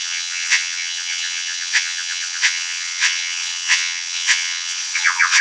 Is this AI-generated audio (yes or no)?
yes